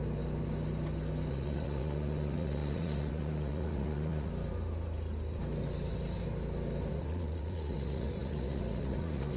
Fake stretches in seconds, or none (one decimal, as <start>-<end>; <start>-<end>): 1.3-4.3; 6.9-9.4

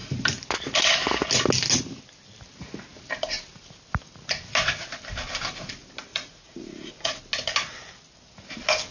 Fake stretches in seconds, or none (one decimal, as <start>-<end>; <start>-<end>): 6.1-7.2

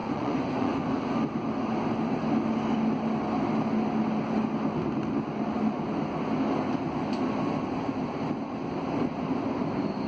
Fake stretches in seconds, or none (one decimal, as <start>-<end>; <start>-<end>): 0.0-0.7